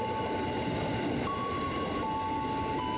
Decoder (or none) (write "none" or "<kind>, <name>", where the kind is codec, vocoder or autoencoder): none